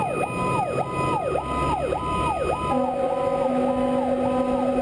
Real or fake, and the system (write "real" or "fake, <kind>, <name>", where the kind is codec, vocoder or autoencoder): real